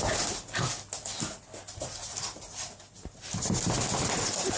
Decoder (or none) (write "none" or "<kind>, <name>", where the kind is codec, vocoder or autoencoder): none